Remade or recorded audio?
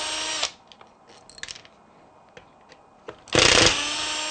recorded